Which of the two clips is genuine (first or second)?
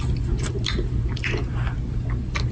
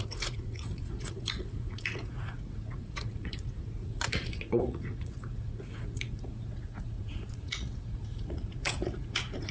first